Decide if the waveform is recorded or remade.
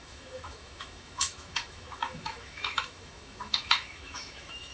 remade